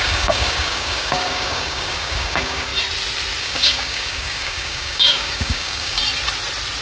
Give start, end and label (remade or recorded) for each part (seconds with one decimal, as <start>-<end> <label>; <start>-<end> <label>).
0.0-2.7 remade; 2.7-3.4 recorded; 3.4-6.0 remade; 6.0-6.8 recorded